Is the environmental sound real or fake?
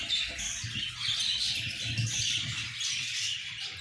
real